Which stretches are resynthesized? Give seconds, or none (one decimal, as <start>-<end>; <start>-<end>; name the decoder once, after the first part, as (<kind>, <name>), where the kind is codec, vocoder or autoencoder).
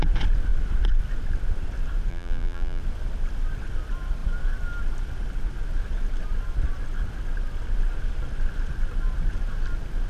2.1-2.8 (vocoder, BigVGAN v2)